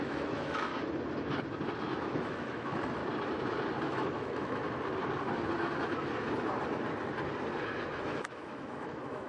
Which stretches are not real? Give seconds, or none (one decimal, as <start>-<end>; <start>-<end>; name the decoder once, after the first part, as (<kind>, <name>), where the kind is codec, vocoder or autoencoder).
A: 0.0-0.7 (autoencoder, DAC-VAE); 2.1-3.0; 3.8-4.6; 8.0-9.3